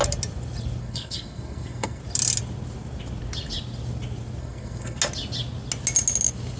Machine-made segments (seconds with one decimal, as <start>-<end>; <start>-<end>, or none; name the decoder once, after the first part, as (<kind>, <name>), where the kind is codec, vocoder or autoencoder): 0.8-2.0 (codec, SNAC); 4.4-5.0